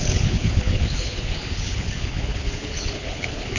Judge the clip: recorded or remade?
remade